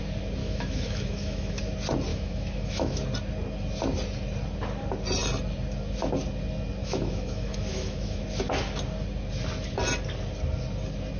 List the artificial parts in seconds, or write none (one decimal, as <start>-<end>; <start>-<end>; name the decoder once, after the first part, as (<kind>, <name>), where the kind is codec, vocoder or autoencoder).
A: 0.4-1.6 (autoencoder, DAC-VAE); 2.1-3.0; 6.8-8.2